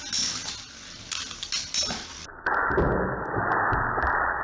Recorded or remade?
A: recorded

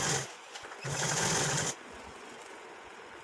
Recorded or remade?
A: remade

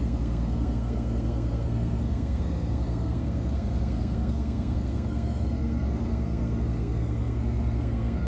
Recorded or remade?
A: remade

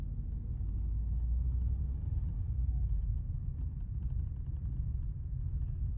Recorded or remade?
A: recorded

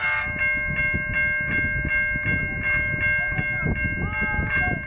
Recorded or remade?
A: recorded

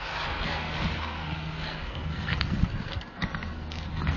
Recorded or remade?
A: remade